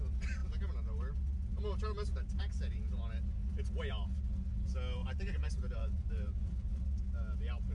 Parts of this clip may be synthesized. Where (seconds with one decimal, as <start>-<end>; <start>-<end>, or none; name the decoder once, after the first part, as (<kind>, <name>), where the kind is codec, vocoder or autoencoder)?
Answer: 5.0-7.0 (vocoder, BigVGAN v2)